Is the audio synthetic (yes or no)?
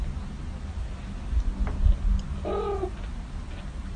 no